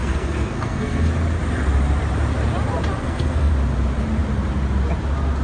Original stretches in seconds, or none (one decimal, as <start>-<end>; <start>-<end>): 1.1-3.0; 3.5-5.4